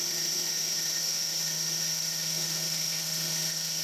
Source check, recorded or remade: remade